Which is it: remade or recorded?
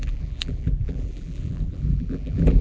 remade